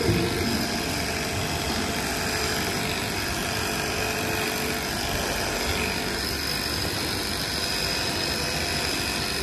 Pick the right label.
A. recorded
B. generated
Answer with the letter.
A